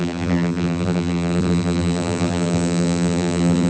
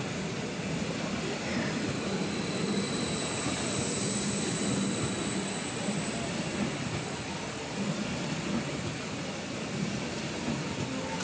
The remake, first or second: first